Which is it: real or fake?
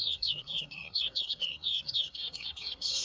fake